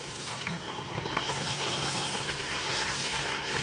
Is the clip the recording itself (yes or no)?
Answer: no